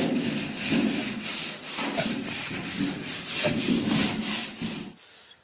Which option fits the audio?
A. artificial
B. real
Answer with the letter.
B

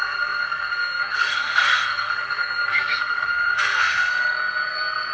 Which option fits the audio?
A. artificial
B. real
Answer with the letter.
A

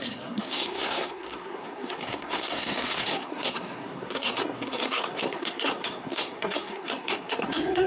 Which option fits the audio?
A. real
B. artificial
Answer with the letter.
B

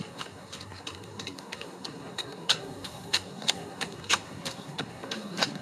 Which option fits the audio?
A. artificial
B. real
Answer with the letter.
A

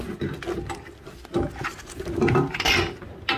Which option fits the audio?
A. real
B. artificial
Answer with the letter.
A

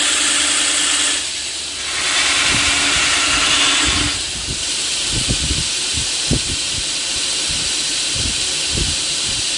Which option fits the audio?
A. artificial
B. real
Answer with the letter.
B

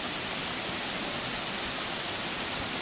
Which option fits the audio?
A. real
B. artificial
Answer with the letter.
A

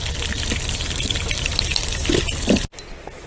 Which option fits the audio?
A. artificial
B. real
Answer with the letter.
B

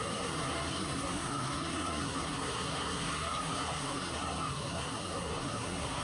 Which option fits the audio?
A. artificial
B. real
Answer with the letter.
A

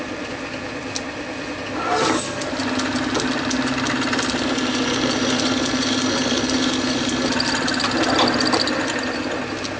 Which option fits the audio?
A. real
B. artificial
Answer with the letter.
A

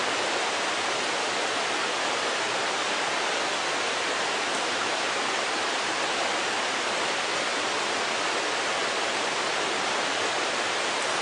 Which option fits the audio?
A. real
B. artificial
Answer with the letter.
A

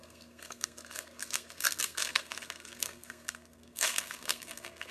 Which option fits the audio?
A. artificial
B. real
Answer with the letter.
A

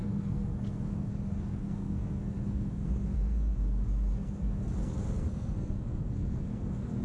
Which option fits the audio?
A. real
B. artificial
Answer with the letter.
B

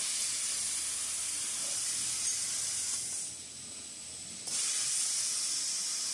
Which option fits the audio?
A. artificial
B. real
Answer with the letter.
B